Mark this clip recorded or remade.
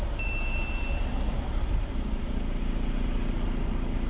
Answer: remade